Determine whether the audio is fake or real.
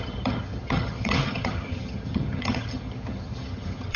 fake